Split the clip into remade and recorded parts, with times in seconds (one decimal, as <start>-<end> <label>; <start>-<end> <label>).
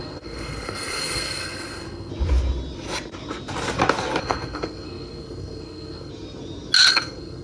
0.0-2.1 remade; 2.1-4.2 recorded; 4.2-6.1 remade; 6.1-6.9 recorded; 6.9-7.4 remade